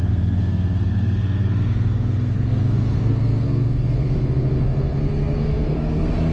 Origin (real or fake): fake